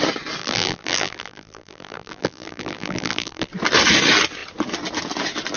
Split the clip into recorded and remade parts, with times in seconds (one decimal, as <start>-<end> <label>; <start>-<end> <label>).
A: 0.0-0.4 recorded; 0.4-3.5 remade; 3.5-5.6 recorded